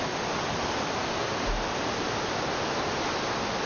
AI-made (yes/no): no